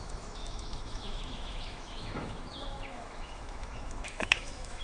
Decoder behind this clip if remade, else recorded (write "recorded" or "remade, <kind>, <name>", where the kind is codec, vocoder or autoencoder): remade, autoencoder, DAC-VAE